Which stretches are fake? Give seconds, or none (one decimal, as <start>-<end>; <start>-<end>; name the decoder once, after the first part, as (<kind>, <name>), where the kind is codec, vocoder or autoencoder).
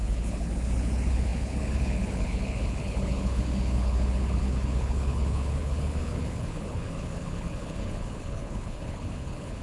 0.0-9.6 (codec, HILCodec)